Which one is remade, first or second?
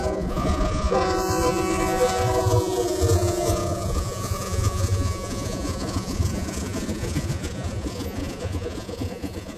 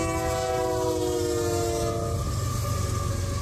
first